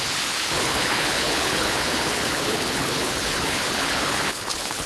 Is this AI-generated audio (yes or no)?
yes